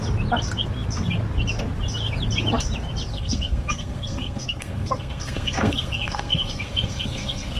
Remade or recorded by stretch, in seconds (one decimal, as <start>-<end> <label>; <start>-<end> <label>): 0.0-3.1 recorded; 3.1-7.6 remade